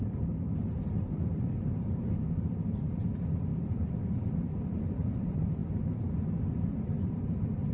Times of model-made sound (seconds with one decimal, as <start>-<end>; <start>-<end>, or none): 0.0-5.6; 6.4-7.7